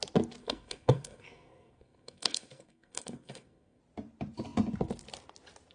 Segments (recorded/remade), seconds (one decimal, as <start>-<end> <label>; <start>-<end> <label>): 0.0-0.4 recorded; 0.4-3.8 remade; 3.8-5.7 recorded